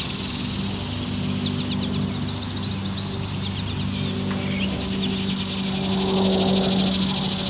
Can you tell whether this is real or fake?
real